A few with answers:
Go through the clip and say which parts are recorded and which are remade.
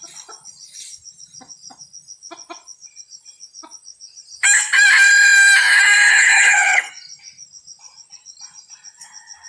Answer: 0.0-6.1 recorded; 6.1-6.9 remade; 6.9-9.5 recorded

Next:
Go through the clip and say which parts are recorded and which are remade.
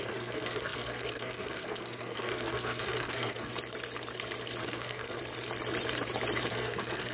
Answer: 0.0-3.5 remade; 3.5-4.6 recorded; 4.6-5.2 remade; 5.2-6.5 recorded; 6.5-7.1 remade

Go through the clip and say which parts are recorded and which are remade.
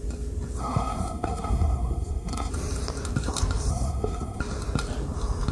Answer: 0.0-0.6 recorded; 0.6-2.5 remade; 2.5-3.7 recorded; 3.7-4.4 remade; 4.4-5.5 recorded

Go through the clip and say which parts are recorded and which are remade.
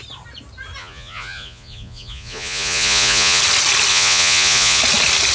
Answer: 0.0-0.8 recorded; 0.8-3.4 remade; 3.4-3.9 recorded; 3.9-4.8 remade; 4.8-5.3 recorded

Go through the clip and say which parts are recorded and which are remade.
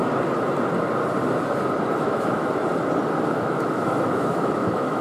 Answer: 0.0-2.0 recorded; 2.0-2.4 remade; 2.4-3.3 recorded; 3.3-5.0 remade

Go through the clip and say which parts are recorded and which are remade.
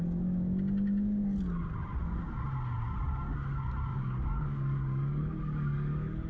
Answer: 0.0-3.9 recorded; 3.9-6.3 remade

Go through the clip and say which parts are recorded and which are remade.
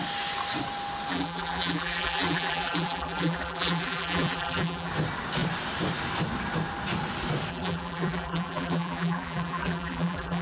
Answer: 0.0-1.1 recorded; 1.1-4.9 remade; 4.9-7.5 recorded; 7.5-10.4 remade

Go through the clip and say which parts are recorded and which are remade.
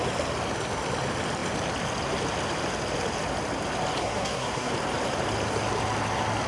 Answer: 0.0-4.0 recorded; 4.0-4.7 remade; 4.7-6.5 recorded